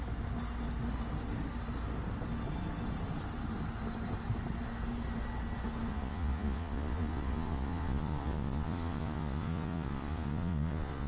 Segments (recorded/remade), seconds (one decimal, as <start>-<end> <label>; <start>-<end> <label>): 0.0-5.9 recorded; 5.9-11.1 remade